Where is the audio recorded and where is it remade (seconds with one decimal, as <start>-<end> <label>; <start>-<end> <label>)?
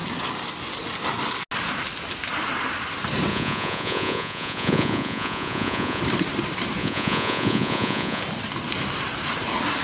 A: 0.0-3.3 recorded; 3.3-6.0 remade; 6.0-6.8 recorded; 6.8-8.2 remade; 8.2-9.8 recorded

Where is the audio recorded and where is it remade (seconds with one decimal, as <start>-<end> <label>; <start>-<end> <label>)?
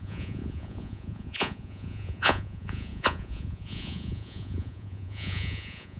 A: 0.0-6.0 remade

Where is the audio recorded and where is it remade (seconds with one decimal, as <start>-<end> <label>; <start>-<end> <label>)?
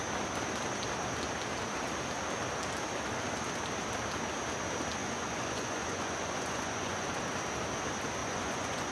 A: 0.0-5.0 recorded; 5.0-7.2 remade; 7.2-8.2 recorded; 8.2-8.9 remade